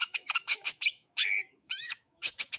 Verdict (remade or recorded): remade